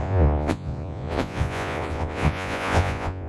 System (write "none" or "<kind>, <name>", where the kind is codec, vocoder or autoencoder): vocoder, Vocos